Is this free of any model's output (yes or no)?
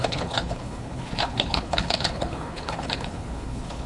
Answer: no